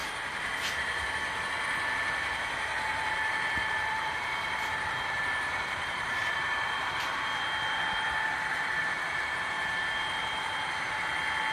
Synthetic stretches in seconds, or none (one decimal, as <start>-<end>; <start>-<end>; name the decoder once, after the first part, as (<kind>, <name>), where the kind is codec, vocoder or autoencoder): 1.9-11.5 (vocoder, BigVGAN v2)